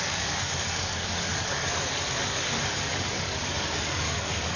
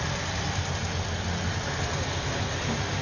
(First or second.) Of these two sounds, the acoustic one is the second